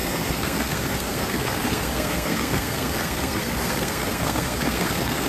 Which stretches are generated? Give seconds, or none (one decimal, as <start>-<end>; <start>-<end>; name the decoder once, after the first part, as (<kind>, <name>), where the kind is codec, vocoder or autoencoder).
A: 0.0-5.3 (codec, SNAC)